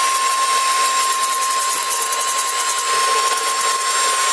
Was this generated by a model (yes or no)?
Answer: no